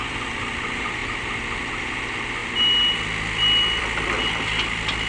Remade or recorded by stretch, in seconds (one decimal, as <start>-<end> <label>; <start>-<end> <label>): 0.0-5.1 recorded